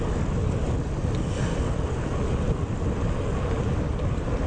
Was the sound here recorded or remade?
recorded